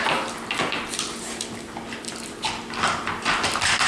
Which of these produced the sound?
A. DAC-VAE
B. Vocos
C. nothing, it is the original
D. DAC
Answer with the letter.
C